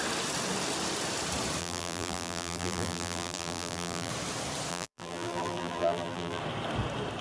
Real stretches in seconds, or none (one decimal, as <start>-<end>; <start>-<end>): 0.0-1.6; 4.1-4.7; 6.4-7.2